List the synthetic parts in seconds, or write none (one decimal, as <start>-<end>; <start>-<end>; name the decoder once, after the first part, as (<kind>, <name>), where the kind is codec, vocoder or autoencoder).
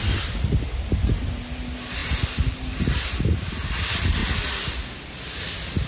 none